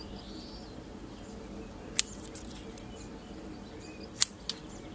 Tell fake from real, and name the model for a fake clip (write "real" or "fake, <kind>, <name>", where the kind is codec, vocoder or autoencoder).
real